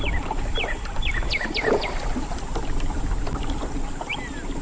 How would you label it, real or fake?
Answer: real